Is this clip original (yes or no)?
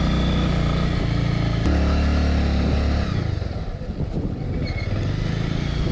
yes